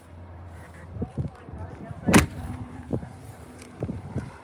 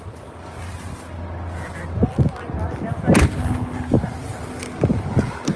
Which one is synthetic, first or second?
first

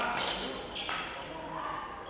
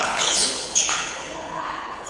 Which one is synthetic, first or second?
second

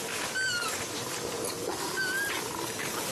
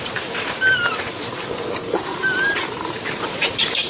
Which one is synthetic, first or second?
second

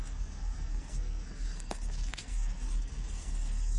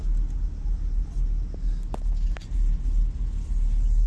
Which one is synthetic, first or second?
first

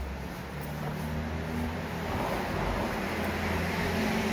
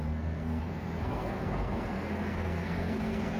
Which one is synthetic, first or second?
second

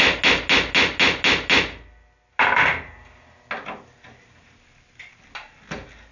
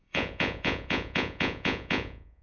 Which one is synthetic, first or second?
second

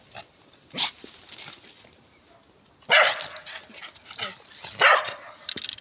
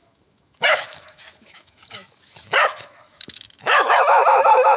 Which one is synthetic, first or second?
second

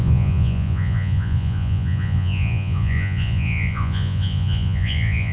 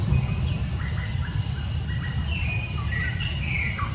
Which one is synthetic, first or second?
first